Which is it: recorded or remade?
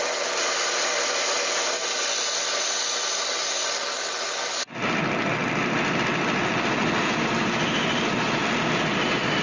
recorded